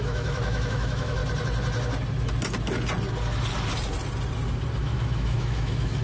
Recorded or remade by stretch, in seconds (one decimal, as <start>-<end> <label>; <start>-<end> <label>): 0.0-1.2 remade; 1.2-4.8 recorded; 4.8-6.0 remade